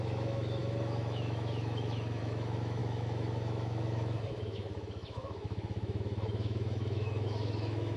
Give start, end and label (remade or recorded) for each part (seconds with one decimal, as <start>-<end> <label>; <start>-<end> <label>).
0.0-8.0 remade